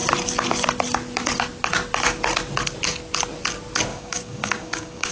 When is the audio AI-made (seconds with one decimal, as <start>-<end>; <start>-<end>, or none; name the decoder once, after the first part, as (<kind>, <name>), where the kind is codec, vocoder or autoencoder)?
3.9-5.1 (codec, DAC)